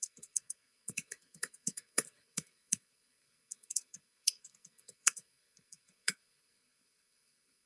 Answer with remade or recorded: remade